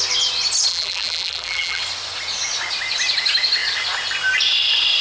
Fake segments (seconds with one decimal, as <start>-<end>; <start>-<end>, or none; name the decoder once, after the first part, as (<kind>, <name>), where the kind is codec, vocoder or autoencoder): 0.7-1.8 (vocoder, BigVGAN v2)